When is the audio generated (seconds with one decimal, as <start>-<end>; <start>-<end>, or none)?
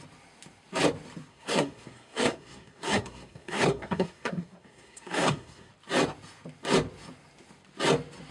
1.3-5.7